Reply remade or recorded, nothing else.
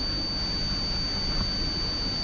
recorded